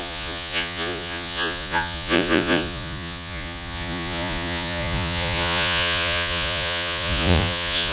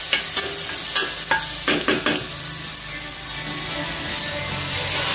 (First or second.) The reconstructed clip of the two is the first